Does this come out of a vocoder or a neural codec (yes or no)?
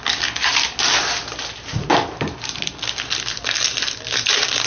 no